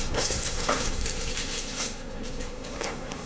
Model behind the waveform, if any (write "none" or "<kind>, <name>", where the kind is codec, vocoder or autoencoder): codec, SNAC